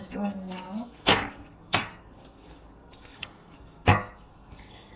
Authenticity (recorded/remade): remade